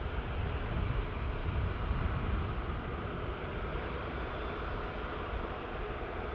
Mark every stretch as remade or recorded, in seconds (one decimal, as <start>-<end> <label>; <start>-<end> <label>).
0.0-6.3 recorded